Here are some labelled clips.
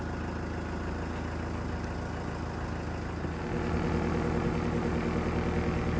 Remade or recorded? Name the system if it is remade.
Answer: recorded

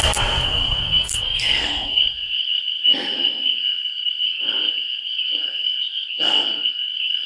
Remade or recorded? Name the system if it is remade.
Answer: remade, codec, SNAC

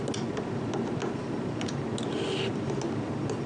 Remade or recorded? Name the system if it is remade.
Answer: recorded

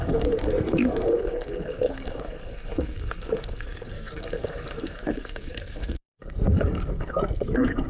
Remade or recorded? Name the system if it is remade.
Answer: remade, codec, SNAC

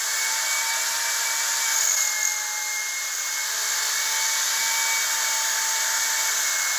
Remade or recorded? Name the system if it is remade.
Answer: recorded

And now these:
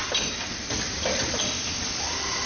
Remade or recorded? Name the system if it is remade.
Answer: recorded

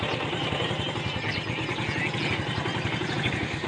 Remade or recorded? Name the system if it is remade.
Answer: recorded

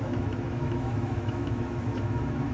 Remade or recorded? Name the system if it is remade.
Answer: remade, autoencoder, DAC-VAE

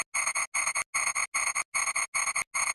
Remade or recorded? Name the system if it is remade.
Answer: recorded